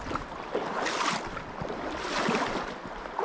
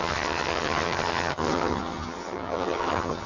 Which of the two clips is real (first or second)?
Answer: first